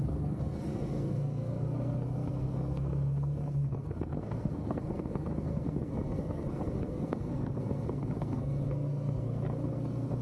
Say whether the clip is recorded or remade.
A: remade